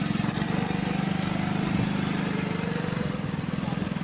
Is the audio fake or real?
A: real